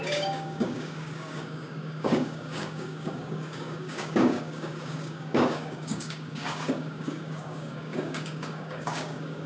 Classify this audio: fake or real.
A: fake